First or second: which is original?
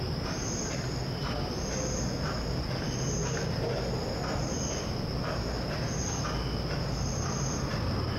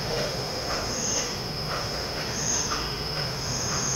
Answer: first